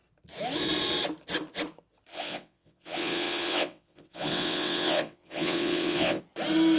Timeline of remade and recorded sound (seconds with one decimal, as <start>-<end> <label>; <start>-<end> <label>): 0.0-2.1 recorded; 2.1-6.2 remade; 6.2-6.8 recorded